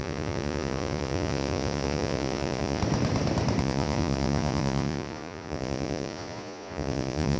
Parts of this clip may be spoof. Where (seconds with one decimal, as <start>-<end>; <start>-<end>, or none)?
0.0-2.8; 3.6-7.4